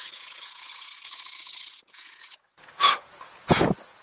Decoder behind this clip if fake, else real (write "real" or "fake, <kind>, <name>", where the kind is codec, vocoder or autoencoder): fake, vocoder, Vocos